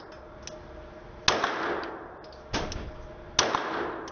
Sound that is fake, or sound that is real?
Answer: real